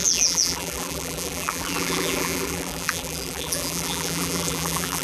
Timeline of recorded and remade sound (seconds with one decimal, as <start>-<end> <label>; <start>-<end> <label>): 0.0-5.0 remade